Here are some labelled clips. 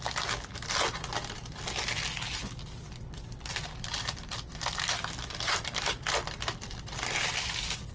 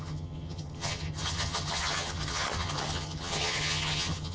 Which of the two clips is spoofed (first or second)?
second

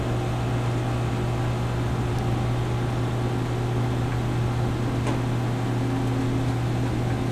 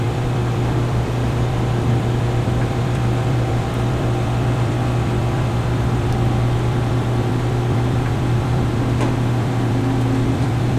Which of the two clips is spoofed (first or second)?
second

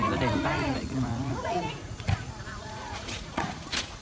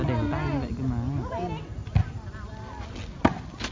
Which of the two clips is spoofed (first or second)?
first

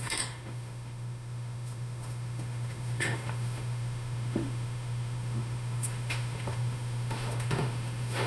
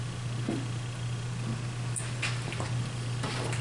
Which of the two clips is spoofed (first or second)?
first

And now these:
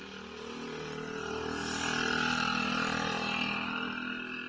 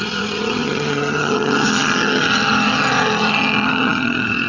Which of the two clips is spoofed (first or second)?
second